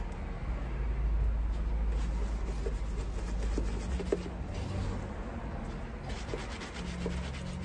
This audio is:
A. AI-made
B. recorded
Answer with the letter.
B